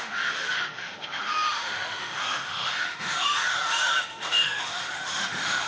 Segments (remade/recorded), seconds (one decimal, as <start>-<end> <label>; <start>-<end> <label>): 0.0-5.7 remade

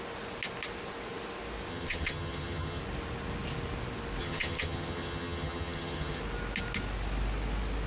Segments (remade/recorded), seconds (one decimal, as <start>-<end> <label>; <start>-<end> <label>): 0.0-1.7 recorded; 1.7-2.8 remade; 2.8-4.2 recorded; 4.2-6.2 remade; 6.2-7.9 recorded

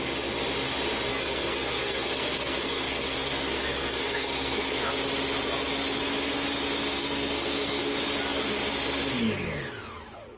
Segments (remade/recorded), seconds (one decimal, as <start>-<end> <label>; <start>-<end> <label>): 0.0-1.1 recorded; 1.1-4.9 remade; 4.9-7.0 recorded; 7.0-7.8 remade; 7.8-10.4 recorded

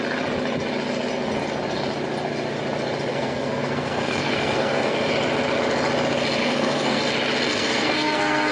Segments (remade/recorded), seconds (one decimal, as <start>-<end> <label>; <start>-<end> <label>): 0.0-3.1 recorded; 3.1-5.1 remade; 5.1-6.4 recorded; 6.4-7.0 remade; 7.0-7.5 recorded; 7.5-8.5 remade